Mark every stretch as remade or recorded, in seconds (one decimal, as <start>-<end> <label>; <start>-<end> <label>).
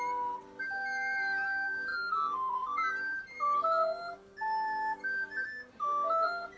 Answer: 0.0-6.6 recorded